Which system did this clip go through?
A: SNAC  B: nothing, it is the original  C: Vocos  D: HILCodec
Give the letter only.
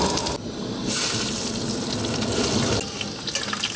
B